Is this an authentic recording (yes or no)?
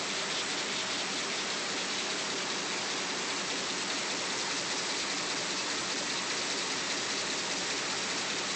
yes